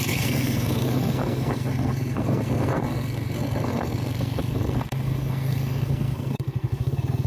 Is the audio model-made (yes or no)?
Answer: yes